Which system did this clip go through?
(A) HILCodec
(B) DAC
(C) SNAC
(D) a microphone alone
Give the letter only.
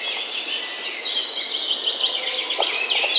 D